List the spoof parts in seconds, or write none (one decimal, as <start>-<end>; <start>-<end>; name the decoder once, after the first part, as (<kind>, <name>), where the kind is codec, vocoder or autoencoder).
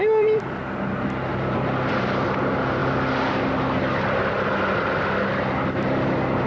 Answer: none